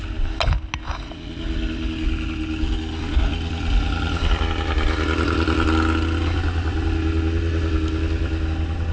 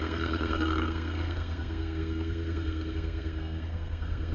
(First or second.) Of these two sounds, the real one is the first